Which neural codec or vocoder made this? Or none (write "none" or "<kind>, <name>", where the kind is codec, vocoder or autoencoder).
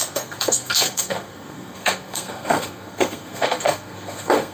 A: codec, SNAC